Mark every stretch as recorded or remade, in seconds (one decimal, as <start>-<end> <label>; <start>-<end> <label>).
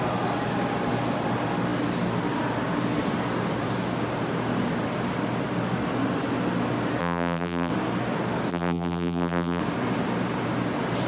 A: 0.0-7.0 recorded; 7.0-7.7 remade; 7.7-8.5 recorded; 8.5-9.6 remade; 9.6-11.1 recorded